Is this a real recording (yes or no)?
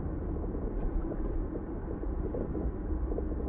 yes